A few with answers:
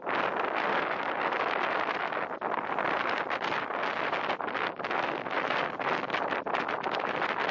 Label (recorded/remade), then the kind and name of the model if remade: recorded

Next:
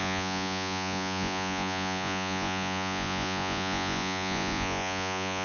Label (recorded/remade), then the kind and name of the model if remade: remade, vocoder, Vocos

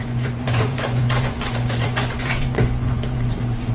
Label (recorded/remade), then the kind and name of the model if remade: remade, vocoder, Vocos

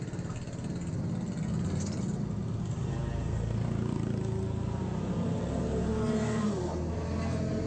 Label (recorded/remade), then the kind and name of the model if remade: recorded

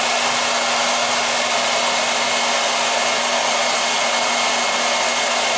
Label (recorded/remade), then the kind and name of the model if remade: recorded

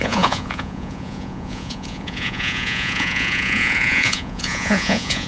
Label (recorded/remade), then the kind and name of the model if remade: remade, vocoder, Vocos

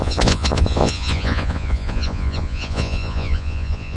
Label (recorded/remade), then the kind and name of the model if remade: remade, vocoder, Vocos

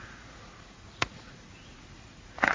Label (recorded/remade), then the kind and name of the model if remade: remade, vocoder, Vocos